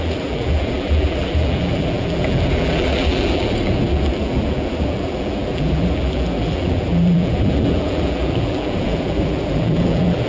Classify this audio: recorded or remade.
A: remade